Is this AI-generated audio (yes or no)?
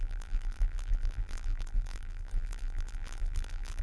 yes